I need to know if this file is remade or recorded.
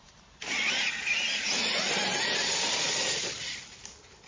recorded